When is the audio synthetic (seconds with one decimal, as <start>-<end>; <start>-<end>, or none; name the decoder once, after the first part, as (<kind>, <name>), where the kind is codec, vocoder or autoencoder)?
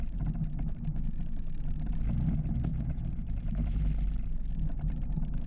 2.7-3.8 (vocoder, Vocos)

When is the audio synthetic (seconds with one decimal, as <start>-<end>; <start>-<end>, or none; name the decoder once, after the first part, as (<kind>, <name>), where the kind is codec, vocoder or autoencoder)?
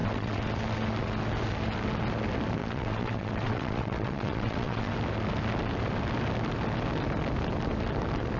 0.0-0.5 (vocoder, WaveNeXt); 2.6-4.9